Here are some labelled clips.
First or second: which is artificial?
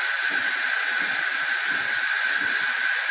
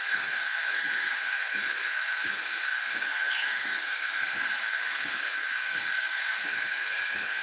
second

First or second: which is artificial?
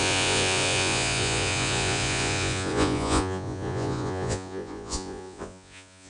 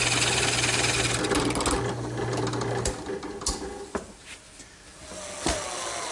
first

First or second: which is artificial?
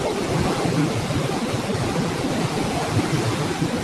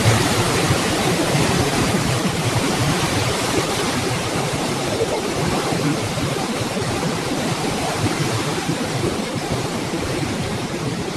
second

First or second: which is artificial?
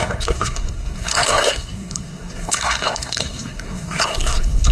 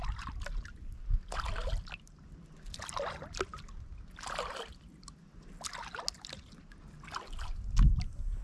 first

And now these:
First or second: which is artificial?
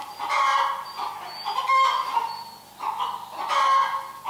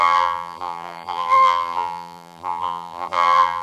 second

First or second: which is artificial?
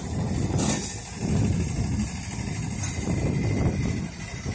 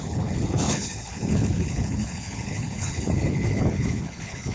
second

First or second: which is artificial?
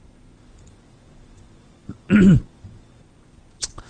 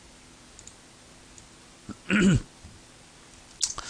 first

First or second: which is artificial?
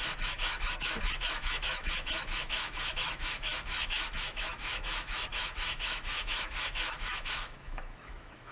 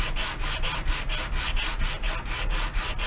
first